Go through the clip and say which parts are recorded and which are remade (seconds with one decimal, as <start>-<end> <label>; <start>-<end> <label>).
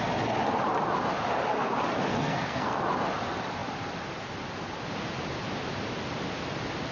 0.0-2.1 recorded; 2.1-2.8 remade; 2.8-6.9 recorded